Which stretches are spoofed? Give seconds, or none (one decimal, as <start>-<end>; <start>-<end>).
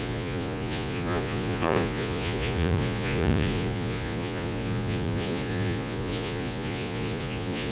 0.0-7.7